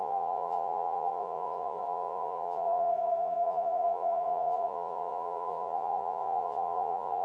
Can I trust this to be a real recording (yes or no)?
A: no